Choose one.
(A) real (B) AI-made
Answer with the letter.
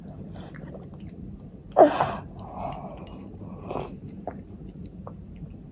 A